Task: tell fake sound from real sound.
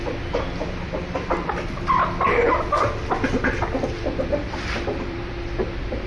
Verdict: fake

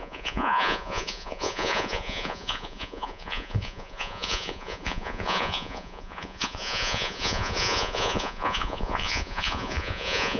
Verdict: fake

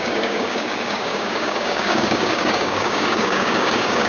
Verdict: fake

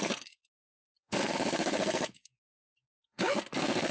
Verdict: fake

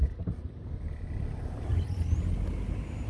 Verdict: real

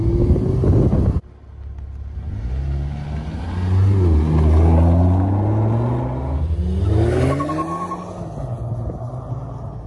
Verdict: real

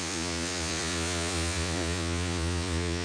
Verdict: fake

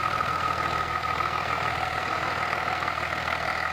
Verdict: fake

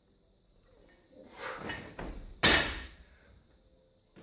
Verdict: real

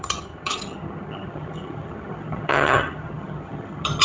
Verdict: fake